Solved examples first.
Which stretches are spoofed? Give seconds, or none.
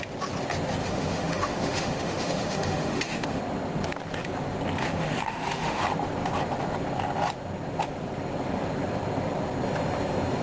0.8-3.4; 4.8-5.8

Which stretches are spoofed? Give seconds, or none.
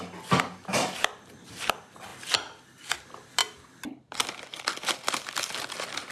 none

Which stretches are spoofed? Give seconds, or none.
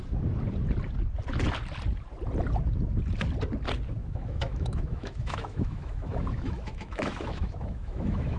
4.0-8.4